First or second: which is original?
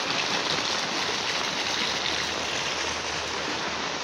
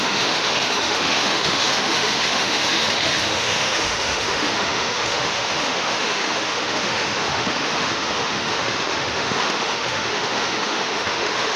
first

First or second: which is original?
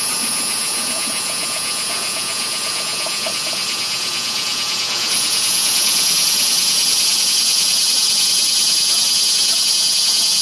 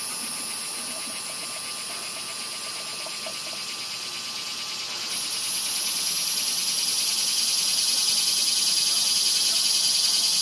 second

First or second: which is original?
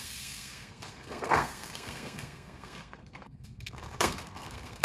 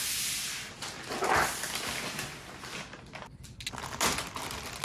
second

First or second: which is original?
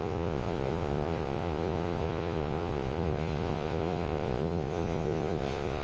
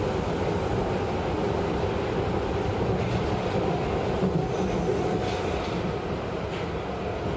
second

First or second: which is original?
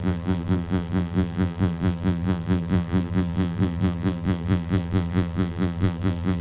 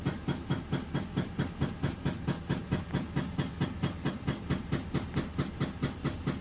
second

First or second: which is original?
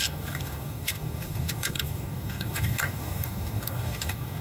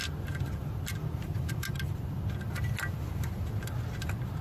second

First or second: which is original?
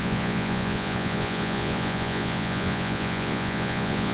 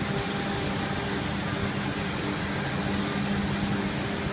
second